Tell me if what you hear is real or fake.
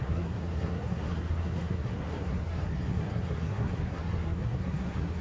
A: fake